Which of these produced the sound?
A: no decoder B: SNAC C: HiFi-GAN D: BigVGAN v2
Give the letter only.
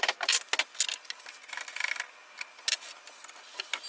A